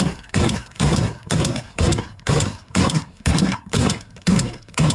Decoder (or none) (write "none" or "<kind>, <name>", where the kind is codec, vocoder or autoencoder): codec, SNAC